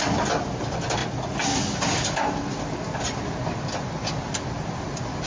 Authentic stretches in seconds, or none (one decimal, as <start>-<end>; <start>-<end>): 0.0-5.3